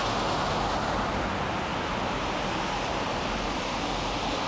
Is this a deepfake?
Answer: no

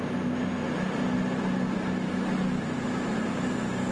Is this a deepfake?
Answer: no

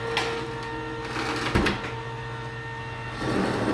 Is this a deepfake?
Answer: no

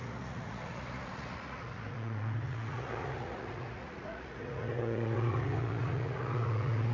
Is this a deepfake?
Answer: yes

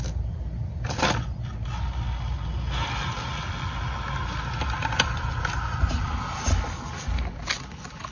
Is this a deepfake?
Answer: no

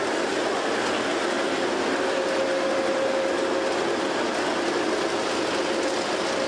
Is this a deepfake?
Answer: no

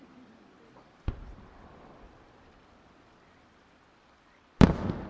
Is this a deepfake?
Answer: no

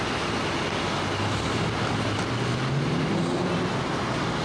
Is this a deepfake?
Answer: no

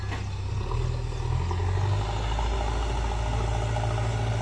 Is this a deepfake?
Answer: no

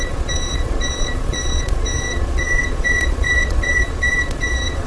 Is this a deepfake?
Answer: yes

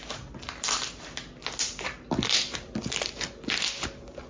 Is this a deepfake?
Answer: no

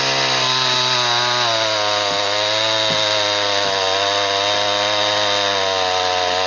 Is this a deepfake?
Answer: no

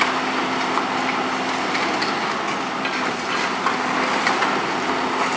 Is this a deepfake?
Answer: no